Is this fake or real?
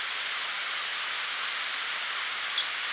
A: real